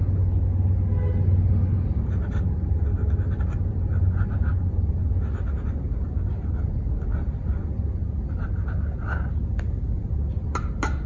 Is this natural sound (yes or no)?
yes